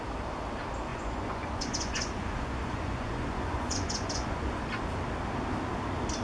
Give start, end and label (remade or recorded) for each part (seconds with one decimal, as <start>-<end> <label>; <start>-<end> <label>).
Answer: 0.0-0.9 recorded; 0.9-4.6 remade; 4.6-6.2 recorded